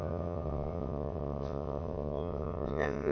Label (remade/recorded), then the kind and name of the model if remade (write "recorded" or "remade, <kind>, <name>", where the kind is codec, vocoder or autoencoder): remade, vocoder, WaveNeXt